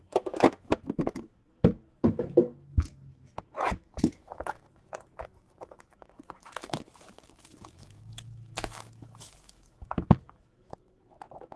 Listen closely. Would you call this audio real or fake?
fake